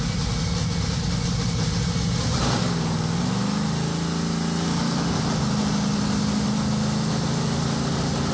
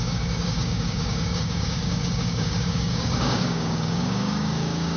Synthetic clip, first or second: second